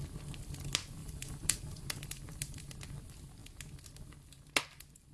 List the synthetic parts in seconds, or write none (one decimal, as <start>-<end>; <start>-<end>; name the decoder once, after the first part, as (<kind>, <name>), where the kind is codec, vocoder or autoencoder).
1.0-2.7 (vocoder, BigVGAN v2)